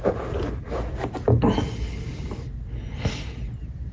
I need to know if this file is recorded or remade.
recorded